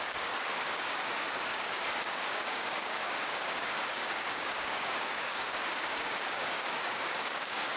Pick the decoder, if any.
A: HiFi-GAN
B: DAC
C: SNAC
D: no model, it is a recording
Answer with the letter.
B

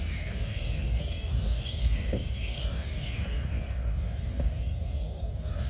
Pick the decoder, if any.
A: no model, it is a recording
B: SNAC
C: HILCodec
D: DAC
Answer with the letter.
D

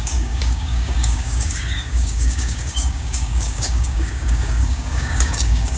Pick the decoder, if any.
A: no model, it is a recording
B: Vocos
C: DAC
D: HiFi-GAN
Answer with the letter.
C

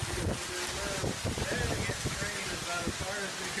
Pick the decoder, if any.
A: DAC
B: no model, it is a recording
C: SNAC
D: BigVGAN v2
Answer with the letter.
B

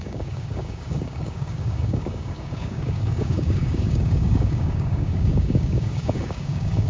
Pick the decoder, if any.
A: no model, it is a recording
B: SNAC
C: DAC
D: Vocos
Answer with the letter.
C